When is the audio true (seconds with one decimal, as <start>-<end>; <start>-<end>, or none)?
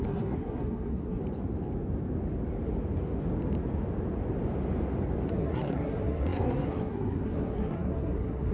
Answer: 1.2-5.3